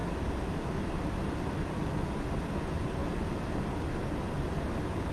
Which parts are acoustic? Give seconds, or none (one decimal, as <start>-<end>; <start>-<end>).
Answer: 0.0-5.1